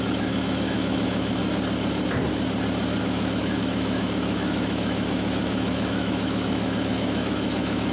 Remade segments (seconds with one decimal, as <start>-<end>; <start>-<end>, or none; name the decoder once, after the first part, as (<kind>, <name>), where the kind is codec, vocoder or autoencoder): 0.0-1.4 (autoencoder, DAC-VAE); 3.0-7.9